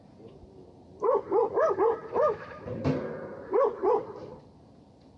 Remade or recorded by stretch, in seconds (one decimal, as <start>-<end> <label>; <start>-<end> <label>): 0.0-5.2 remade